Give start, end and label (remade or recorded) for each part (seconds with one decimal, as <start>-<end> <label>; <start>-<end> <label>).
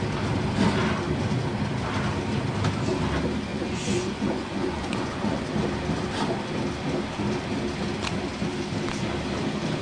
0.0-3.5 recorded; 3.5-5.4 remade; 5.4-9.8 recorded